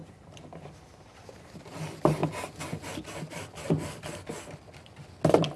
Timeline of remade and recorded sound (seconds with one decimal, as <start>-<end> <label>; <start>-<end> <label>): 0.0-0.7 remade; 0.7-5.6 recorded